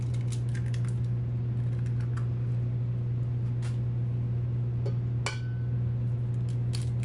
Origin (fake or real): real